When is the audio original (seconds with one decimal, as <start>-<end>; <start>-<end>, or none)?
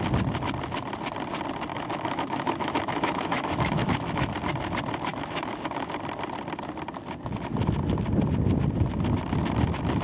0.0-1.7; 4.3-5.1; 5.9-10.0